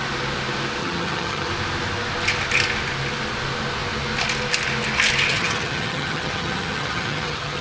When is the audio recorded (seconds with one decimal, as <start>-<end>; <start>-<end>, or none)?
0.0-0.8; 1.5-5.3